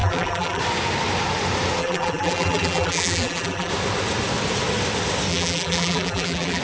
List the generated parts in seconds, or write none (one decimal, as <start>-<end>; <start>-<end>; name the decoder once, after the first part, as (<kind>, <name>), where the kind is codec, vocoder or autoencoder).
0.0-0.6 (vocoder, BigVGAN v2); 1.8-3.7; 5.3-6.6